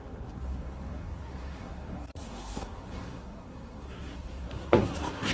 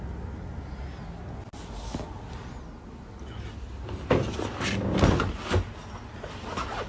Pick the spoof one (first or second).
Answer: first